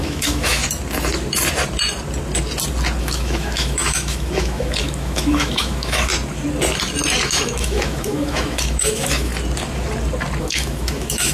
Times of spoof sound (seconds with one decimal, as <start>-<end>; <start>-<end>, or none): 0.0-0.6; 3.0-6.1; 7.2-9.3; 10.4-11.3